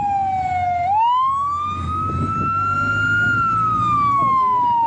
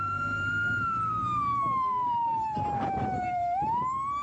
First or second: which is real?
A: first